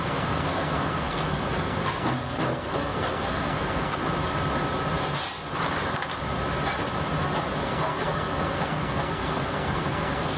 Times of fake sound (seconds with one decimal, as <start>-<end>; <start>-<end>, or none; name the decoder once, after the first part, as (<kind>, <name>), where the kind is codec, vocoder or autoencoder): 0.0-4.0 (codec, SNAC); 7.6-10.4